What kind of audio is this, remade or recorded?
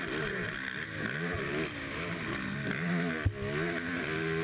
recorded